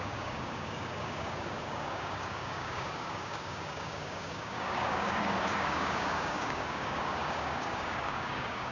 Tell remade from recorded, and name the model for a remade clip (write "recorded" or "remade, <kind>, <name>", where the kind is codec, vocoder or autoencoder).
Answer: remade, codec, DAC